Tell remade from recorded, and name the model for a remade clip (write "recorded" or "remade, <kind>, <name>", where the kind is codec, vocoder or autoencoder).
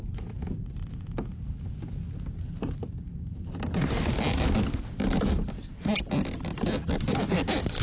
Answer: recorded